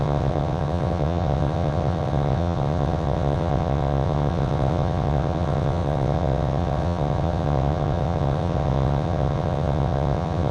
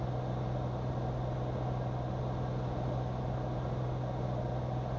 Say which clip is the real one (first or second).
second